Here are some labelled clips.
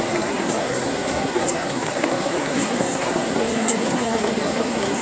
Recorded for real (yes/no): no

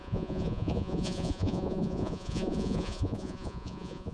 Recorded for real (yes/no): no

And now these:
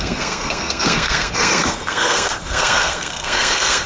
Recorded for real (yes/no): no